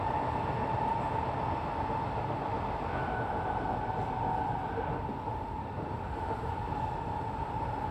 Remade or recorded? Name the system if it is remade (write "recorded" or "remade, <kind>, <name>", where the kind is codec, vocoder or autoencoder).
recorded